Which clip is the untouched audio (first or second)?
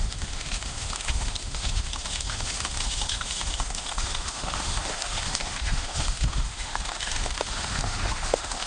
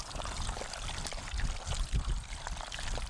second